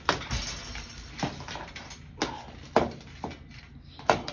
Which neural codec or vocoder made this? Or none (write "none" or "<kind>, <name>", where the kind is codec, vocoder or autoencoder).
none